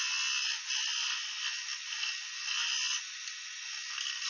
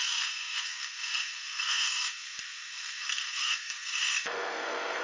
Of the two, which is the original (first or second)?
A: first